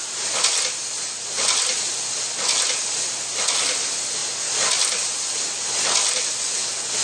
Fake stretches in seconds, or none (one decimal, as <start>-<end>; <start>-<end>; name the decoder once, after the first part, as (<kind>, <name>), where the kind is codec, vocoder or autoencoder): none